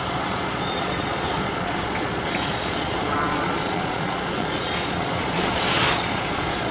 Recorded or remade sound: remade